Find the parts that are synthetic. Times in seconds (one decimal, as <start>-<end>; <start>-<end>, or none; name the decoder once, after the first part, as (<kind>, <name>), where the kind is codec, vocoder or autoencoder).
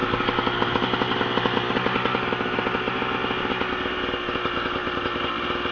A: none